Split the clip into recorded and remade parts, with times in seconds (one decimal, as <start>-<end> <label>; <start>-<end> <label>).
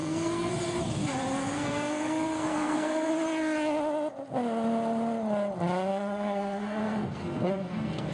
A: 0.0-0.5 remade; 0.5-1.4 recorded; 1.4-3.1 remade; 3.1-5.9 recorded; 5.9-8.1 remade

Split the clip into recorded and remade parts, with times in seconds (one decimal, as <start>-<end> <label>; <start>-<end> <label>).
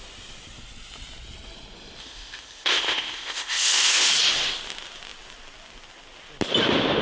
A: 0.0-2.0 recorded; 2.0-4.1 remade; 4.1-7.0 recorded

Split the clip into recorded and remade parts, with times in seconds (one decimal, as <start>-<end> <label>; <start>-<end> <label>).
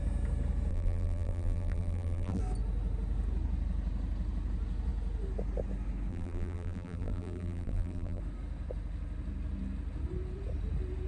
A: 0.0-0.7 recorded; 0.7-2.4 remade; 2.4-6.1 recorded; 6.1-8.2 remade; 8.2-11.1 recorded